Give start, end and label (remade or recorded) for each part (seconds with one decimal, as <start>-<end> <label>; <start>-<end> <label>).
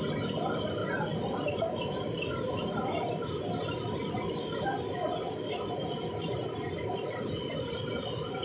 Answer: 0.0-8.4 recorded